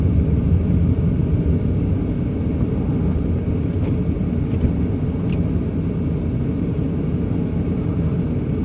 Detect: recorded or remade recorded